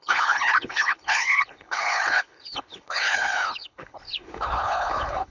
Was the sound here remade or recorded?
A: remade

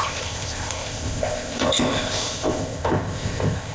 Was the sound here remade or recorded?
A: remade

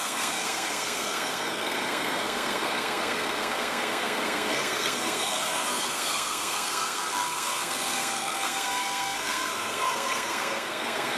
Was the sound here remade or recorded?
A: remade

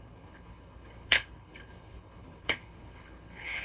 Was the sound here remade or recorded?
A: remade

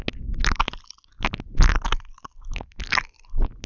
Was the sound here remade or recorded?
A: recorded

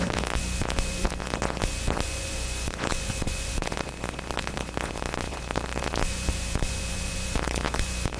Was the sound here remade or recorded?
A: remade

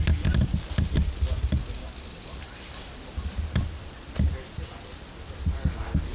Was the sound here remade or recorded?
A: recorded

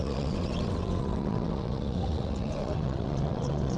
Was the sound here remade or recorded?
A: remade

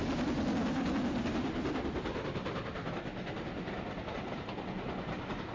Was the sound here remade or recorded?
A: recorded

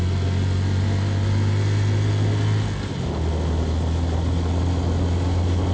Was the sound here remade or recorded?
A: recorded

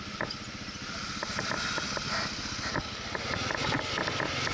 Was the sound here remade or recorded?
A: recorded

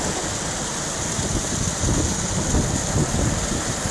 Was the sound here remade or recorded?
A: recorded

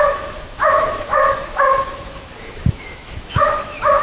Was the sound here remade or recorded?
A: remade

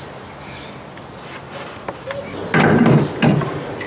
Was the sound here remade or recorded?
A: recorded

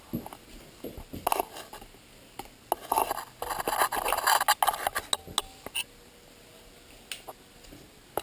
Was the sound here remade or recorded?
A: recorded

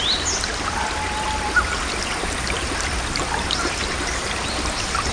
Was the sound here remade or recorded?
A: recorded